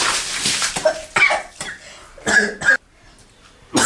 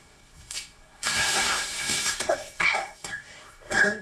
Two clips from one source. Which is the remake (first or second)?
second